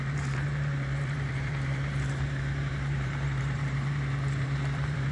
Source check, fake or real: fake